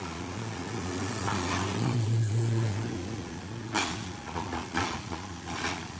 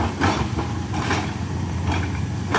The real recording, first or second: second